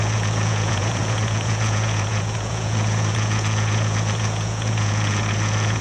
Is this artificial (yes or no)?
yes